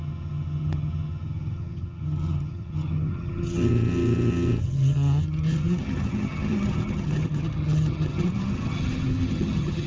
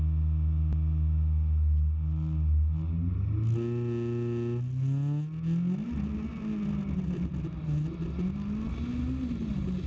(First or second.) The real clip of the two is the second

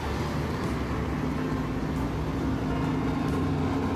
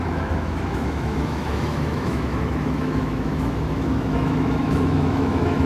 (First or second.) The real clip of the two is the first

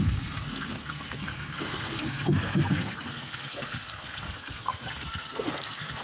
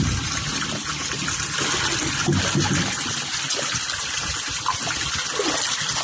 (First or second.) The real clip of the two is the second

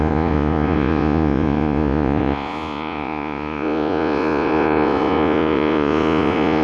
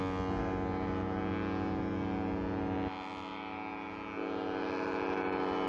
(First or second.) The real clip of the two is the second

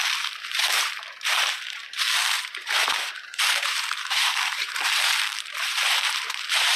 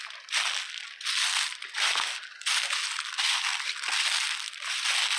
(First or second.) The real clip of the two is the second